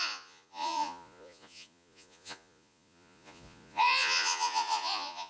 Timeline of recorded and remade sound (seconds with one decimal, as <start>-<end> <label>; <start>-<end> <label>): 0.0-5.3 remade